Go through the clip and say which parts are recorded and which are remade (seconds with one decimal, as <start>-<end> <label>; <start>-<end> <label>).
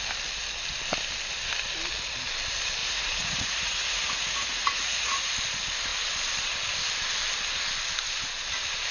0.0-2.8 recorded; 2.8-5.2 remade; 5.2-8.9 recorded